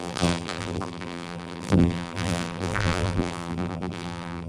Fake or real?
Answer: fake